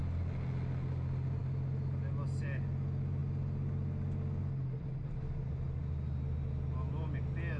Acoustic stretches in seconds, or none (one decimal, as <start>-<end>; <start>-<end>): 0.0-7.6